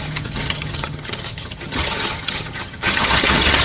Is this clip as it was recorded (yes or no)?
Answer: no